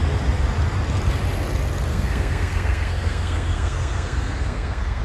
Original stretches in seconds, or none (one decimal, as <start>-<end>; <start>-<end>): 0.0-1.9